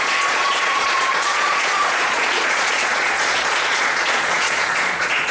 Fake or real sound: fake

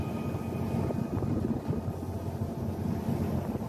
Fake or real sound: real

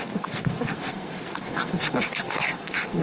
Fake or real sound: fake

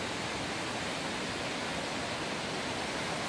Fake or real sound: real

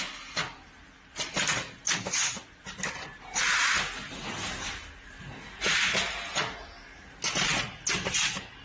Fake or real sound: real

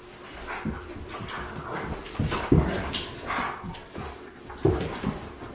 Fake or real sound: real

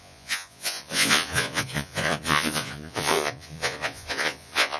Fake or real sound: fake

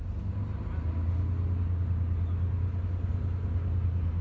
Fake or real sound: real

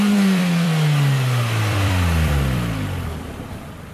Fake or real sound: fake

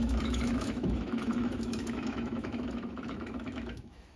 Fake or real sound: fake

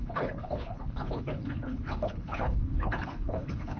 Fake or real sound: fake